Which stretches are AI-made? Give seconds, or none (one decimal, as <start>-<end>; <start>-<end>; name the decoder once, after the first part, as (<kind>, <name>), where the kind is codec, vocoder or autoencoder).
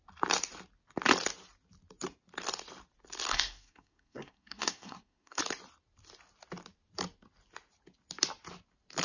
3.3-5.4 (codec, SNAC)